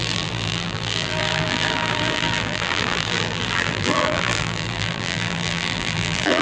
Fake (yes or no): yes